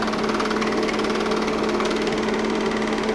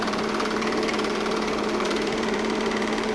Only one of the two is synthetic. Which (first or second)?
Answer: second